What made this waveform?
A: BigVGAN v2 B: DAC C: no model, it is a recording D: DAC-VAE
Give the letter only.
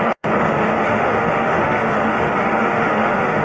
D